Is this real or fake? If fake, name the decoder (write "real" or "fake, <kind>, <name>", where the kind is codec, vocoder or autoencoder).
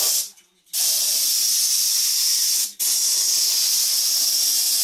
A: real